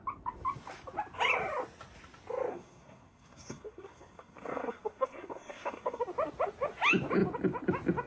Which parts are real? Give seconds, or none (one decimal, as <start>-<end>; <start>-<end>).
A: 0.0-2.5; 6.0-8.1